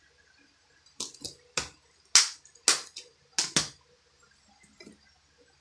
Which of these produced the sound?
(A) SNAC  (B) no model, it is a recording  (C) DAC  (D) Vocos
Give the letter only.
B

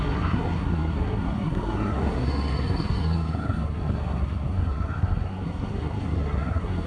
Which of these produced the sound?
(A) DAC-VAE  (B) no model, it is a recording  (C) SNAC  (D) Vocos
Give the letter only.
C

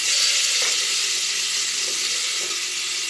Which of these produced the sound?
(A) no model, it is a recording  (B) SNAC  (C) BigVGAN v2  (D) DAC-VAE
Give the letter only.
A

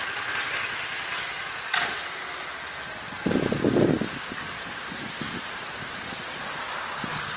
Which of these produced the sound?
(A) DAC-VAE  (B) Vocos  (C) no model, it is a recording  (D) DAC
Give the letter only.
C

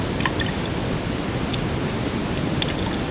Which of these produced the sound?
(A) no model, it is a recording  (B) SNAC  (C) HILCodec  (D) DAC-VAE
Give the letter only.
A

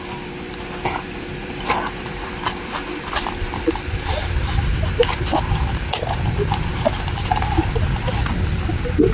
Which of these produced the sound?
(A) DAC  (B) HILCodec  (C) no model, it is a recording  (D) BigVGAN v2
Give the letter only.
D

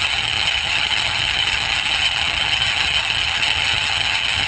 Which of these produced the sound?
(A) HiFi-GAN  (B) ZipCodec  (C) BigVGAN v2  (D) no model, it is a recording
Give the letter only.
A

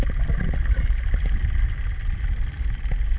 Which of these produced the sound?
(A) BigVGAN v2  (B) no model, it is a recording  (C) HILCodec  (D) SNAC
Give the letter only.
A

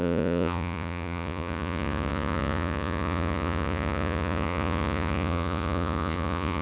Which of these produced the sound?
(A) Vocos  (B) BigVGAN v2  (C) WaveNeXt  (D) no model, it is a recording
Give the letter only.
A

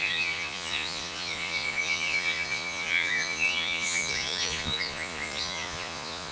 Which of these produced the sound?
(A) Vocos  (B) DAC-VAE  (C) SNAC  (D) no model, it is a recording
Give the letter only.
A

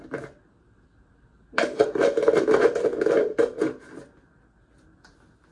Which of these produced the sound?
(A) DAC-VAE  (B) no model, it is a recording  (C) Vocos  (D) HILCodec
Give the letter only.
B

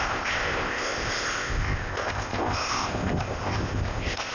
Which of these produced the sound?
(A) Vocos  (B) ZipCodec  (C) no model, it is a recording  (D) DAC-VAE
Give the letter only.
B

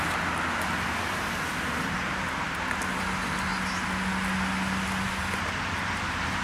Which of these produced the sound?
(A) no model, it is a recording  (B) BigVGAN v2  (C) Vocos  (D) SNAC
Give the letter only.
A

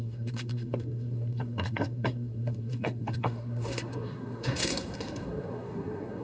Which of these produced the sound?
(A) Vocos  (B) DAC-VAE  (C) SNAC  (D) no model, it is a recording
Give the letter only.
C